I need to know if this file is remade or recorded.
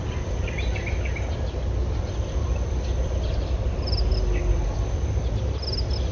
recorded